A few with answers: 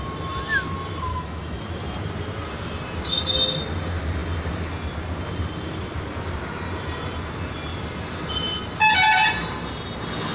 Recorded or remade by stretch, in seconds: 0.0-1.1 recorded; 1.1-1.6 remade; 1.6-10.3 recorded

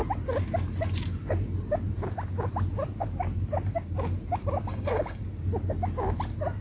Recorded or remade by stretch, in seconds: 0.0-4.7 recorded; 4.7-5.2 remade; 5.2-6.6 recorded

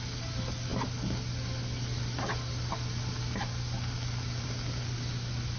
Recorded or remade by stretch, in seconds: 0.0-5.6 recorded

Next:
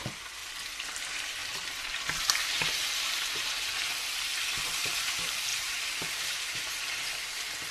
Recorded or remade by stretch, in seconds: 0.0-7.7 remade